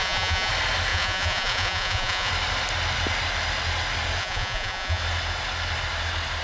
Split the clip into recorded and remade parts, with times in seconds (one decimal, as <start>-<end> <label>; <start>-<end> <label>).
0.0-0.5 remade; 0.5-0.9 recorded; 0.9-2.3 remade; 2.3-4.2 recorded; 4.2-5.0 remade; 5.0-6.4 recorded